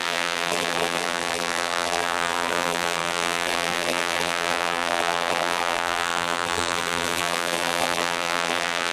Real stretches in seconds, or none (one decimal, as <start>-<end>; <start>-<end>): none